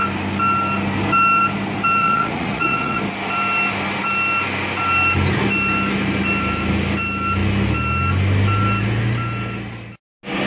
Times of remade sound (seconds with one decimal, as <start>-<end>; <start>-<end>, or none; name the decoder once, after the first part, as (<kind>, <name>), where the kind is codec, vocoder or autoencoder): 2.0-3.0 (vocoder, Vocos)